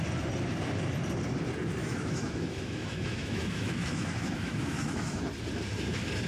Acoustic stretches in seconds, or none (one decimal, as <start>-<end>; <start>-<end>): 0.0-1.8; 5.2-6.3